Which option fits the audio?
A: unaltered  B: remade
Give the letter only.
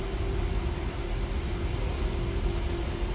A